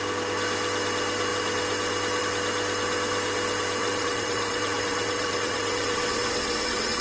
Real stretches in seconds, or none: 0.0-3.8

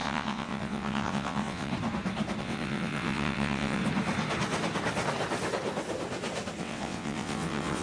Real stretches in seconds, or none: 1.7-2.4; 3.8-6.6